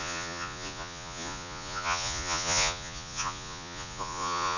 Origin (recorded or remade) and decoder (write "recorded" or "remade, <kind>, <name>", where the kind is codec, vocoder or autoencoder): remade, vocoder, Vocos